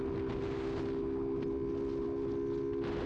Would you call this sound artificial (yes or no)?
no